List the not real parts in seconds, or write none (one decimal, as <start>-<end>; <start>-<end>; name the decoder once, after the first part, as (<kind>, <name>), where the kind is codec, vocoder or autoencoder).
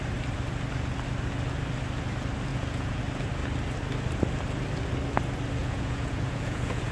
2.5-3.0 (vocoder, Vocos); 5.6-6.9